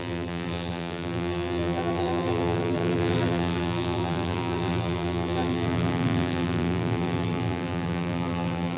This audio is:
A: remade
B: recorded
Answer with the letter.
A